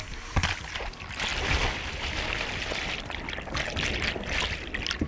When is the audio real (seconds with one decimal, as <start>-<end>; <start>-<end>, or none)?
0.0-5.1